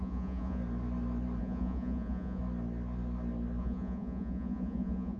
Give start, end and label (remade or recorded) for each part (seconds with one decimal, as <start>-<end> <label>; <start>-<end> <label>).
0.0-0.6 remade; 0.6-1.4 recorded; 1.4-2.4 remade; 2.4-3.6 recorded; 3.6-5.2 remade